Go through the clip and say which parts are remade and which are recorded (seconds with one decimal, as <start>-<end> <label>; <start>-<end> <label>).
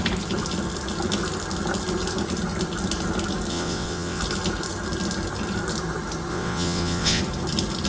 0.0-3.5 recorded; 3.5-4.2 remade; 4.2-6.3 recorded; 6.3-7.2 remade; 7.2-7.9 recorded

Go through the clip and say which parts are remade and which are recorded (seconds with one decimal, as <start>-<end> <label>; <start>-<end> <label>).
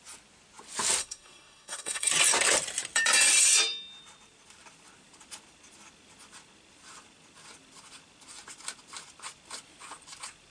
0.0-1.0 recorded; 1.0-2.1 remade; 2.1-10.5 recorded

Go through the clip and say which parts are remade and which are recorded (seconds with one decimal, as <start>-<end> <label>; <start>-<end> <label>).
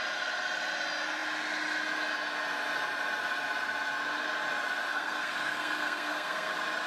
0.0-4.9 recorded; 4.9-6.5 remade; 6.5-6.9 recorded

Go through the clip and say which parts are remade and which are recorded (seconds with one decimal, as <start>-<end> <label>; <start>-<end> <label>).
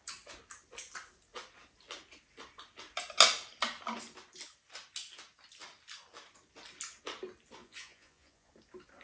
0.0-7.6 recorded; 7.6-8.5 remade; 8.5-9.0 recorded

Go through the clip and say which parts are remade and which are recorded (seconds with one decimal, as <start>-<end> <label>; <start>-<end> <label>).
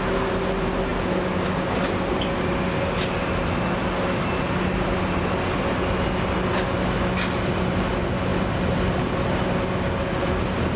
0.0-8.3 recorded; 8.3-9.3 remade; 9.3-10.8 recorded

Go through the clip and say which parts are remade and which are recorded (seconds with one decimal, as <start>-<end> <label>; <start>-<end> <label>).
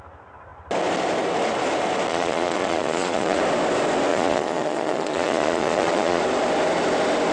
0.0-2.1 recorded; 2.1-3.4 remade; 3.4-4.1 recorded; 4.1-6.2 remade; 6.2-7.3 recorded